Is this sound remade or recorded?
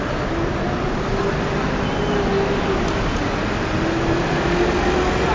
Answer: recorded